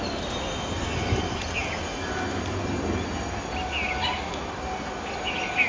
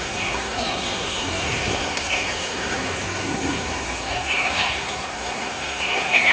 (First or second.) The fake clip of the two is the second